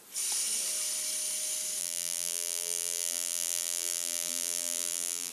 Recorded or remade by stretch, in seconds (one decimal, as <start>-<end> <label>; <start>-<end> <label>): 0.0-1.8 recorded; 1.8-5.3 remade